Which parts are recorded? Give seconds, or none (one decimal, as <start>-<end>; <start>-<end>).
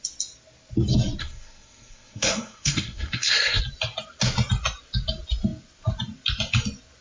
0.0-1.2; 3.6-7.0